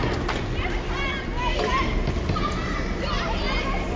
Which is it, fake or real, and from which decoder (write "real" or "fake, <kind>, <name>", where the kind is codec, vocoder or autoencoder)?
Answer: real